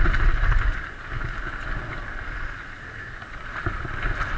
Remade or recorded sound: recorded